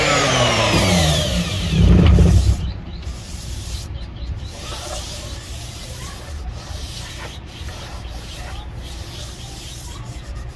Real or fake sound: fake